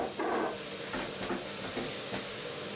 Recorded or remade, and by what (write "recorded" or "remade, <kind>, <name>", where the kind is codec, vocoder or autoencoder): recorded